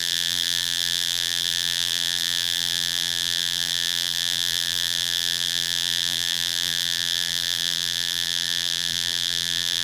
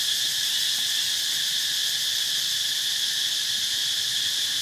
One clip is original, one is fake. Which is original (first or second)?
second